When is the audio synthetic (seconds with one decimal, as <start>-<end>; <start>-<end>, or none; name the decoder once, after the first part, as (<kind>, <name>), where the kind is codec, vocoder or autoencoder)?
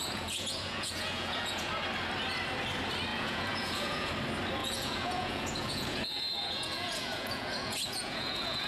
0.0-1.7 (vocoder, Vocos); 3.1-4.1; 4.6-8.7